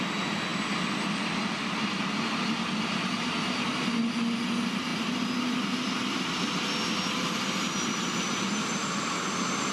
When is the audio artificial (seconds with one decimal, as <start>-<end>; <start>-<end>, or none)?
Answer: none